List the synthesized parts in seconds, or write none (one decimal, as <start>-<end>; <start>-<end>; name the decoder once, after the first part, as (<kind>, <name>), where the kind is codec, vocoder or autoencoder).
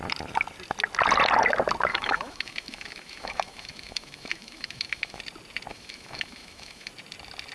1.9-5.2 (autoencoder, DAC-VAE); 5.7-6.9